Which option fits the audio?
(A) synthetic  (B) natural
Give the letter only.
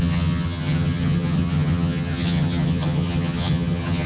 A